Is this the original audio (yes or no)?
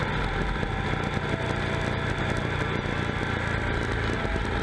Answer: yes